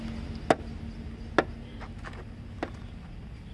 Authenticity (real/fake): real